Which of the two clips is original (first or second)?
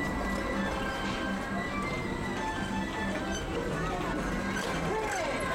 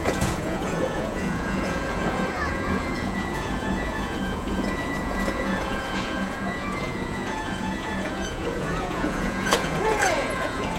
first